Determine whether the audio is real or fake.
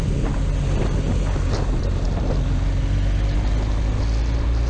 real